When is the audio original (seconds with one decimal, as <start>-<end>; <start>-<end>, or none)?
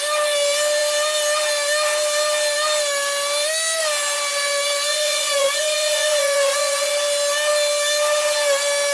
0.0-4.9; 6.9-8.9